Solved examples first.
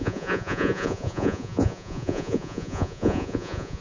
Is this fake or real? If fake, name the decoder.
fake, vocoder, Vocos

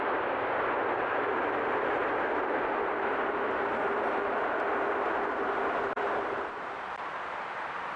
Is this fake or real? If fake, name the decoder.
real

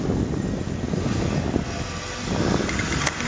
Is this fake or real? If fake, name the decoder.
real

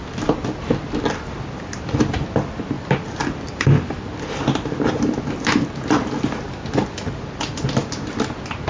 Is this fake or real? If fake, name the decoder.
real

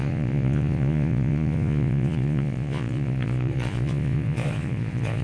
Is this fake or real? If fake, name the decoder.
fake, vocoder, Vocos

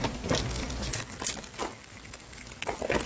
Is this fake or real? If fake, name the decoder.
real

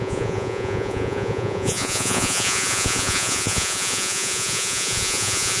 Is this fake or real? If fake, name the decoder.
fake, vocoder, Vocos